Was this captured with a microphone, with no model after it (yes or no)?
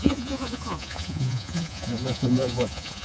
no